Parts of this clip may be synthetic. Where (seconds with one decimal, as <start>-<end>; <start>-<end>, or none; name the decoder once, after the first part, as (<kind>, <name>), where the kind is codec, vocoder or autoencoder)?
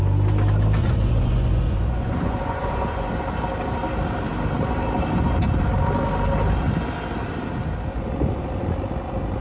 0.8-3.1 (vocoder, Vocos)